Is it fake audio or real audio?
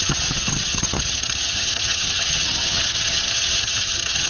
fake